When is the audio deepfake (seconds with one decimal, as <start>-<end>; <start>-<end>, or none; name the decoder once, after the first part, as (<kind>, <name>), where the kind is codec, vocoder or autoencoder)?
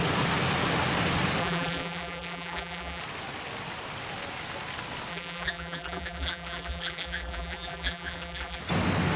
1.4-3.0 (vocoder, BigVGAN v2); 5.1-8.6